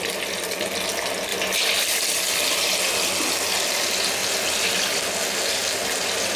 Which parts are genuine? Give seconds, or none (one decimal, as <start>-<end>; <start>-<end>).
0.0-1.3; 2.0-4.2; 5.0-5.6